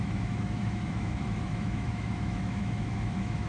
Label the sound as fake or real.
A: fake